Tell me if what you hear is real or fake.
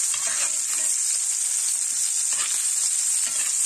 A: real